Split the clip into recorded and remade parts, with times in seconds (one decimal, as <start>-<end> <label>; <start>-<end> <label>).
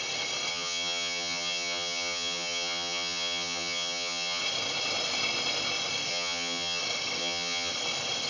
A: 0.0-0.5 recorded; 0.5-4.4 remade; 4.4-6.1 recorded; 6.1-6.8 remade; 6.8-7.2 recorded; 7.2-7.7 remade; 7.7-8.3 recorded